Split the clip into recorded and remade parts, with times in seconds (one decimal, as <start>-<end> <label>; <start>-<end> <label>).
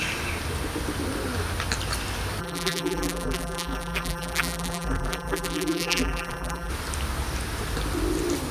0.0-2.4 recorded; 2.4-6.7 remade; 6.7-8.5 recorded